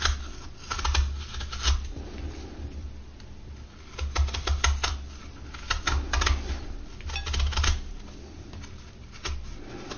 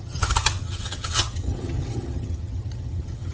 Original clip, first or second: first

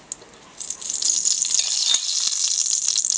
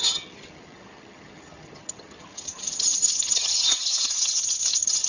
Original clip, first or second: first